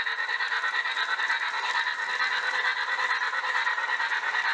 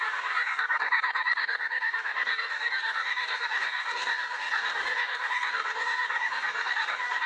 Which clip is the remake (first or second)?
second